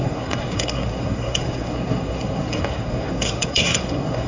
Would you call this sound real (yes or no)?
no